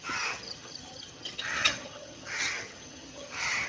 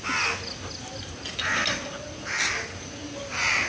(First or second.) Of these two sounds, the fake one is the first